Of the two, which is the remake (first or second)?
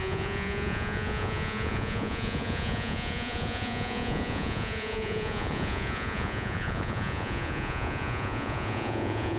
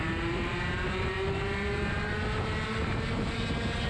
first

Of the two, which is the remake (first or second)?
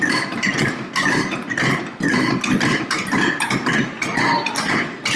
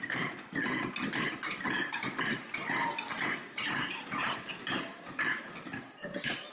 second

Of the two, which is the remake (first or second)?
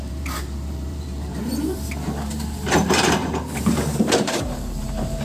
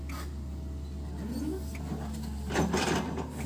first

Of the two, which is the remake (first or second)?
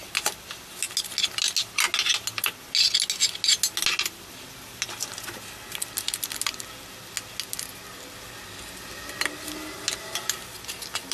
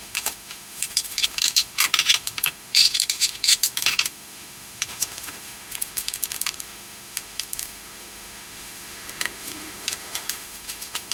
second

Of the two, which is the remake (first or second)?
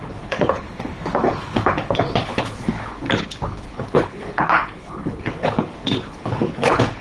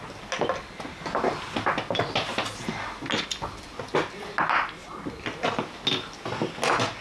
first